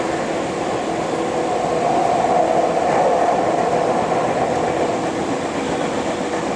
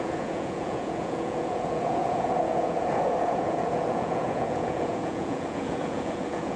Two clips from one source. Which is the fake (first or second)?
second